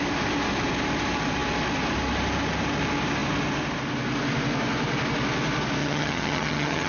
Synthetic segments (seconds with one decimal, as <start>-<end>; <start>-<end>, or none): 5.8-6.9